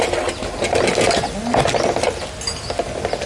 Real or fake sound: real